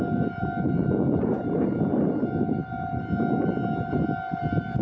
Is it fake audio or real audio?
real